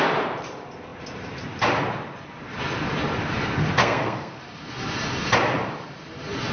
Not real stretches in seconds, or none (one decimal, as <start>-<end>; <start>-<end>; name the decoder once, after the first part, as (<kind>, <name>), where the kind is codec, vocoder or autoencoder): 3.8-4.4 (codec, SNAC)